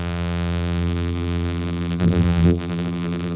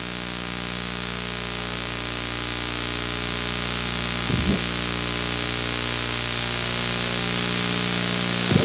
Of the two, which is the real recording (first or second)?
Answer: second